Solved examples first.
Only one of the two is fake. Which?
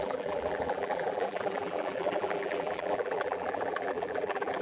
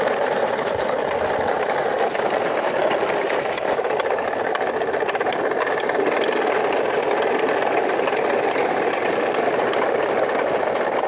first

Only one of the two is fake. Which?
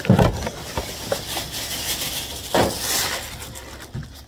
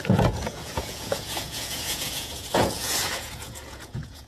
second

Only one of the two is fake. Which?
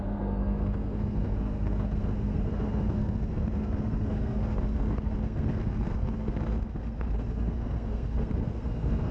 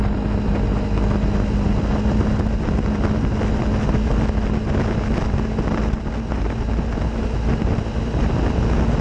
first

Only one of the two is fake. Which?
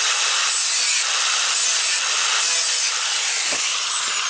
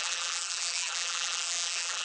second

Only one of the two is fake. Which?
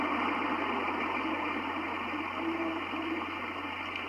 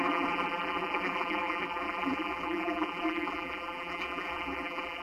second